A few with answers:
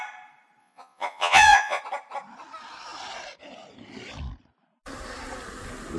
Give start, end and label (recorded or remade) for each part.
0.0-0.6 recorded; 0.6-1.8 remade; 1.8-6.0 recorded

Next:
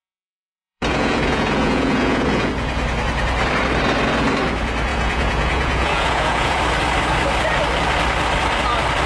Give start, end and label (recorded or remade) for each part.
0.0-2.5 remade; 2.5-4.9 recorded; 4.9-6.6 remade; 6.6-9.1 recorded